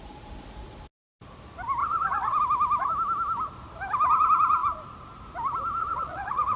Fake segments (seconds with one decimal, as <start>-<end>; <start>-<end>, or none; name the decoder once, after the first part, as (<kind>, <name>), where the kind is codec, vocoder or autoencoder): 1.8-2.4 (vocoder, WaveNeXt); 5.8-6.6